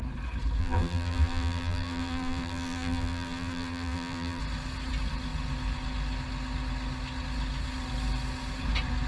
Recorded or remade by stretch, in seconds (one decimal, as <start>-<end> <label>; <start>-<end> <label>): 0.0-0.6 recorded; 0.6-4.4 remade; 4.4-9.1 recorded